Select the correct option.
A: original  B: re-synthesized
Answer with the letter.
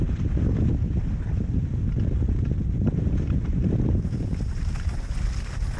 B